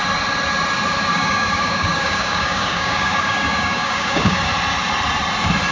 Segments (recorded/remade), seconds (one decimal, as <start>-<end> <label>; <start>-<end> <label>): 0.0-1.1 recorded; 1.1-4.5 remade; 4.5-5.7 recorded